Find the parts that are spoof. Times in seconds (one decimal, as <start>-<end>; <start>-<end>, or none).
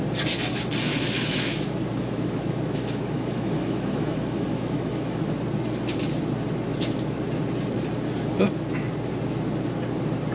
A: 0.9-5.3